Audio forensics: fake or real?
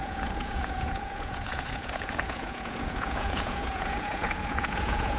fake